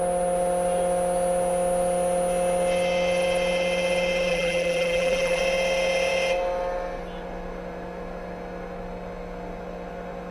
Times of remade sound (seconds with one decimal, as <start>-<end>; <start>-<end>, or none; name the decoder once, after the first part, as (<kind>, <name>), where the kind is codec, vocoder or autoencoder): 4.3-5.4 (vocoder, BigVGAN v2)